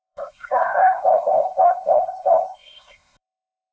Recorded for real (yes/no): no